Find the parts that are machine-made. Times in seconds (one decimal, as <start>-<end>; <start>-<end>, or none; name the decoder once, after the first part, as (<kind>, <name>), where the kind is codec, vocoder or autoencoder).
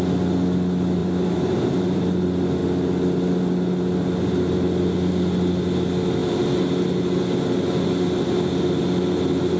1.0-2.0 (vocoder, BigVGAN v2)